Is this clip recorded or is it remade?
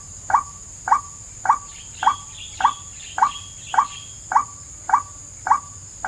recorded